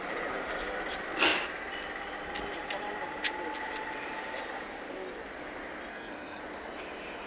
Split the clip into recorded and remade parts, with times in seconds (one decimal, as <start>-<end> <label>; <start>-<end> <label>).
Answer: 0.0-5.9 recorded; 5.9-6.4 remade; 6.4-7.3 recorded